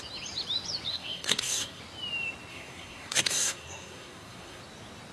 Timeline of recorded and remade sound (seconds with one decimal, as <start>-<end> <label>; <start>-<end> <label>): 0.0-0.9 recorded; 0.9-1.8 remade; 1.8-2.5 recorded; 2.5-4.6 remade; 4.6-5.1 recorded